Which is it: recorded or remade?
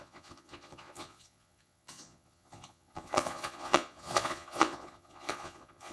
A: remade